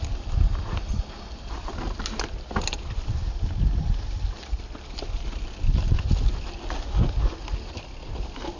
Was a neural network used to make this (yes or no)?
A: no